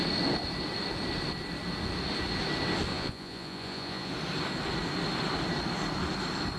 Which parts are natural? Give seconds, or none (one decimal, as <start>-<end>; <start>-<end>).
0.0-2.9; 4.1-6.6

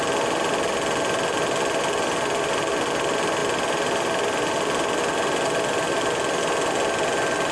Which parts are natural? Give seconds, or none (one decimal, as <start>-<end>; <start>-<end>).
0.0-7.5

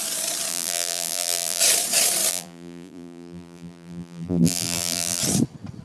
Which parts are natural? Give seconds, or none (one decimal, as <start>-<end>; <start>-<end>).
0.0-0.5; 1.6-2.3; 5.2-5.8

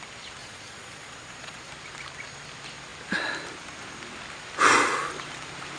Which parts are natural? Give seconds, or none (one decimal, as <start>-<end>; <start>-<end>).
0.0-0.4; 1.7-5.8

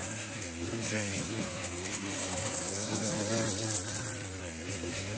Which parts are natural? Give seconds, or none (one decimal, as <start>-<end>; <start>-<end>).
3.1-4.4

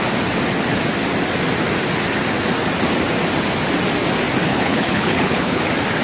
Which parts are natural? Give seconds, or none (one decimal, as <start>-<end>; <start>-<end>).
0.0-4.5; 5.6-6.0

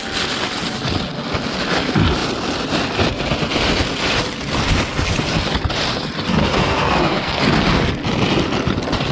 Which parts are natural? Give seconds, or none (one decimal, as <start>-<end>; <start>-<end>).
0.0-6.4; 7.4-9.1

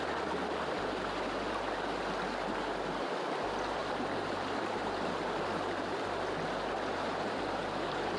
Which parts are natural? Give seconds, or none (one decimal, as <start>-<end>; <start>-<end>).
0.0-3.8; 6.0-8.2